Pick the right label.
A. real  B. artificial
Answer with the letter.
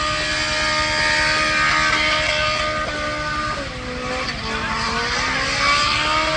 A